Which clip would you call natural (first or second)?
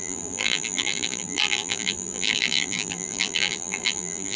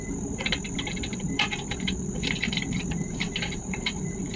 second